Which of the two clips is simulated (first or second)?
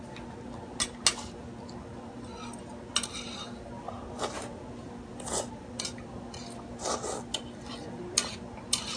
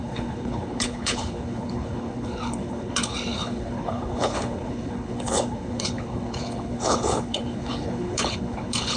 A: second